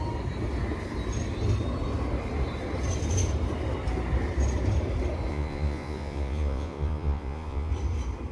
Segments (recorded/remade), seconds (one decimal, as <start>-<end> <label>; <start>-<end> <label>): 0.0-5.3 recorded; 5.3-7.7 remade; 7.7-8.3 recorded